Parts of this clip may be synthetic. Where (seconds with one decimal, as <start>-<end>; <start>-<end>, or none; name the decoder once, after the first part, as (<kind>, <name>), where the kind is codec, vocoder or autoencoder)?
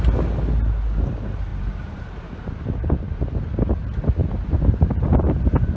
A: 1.5-2.5 (vocoder, BigVGAN v2); 4.2-4.9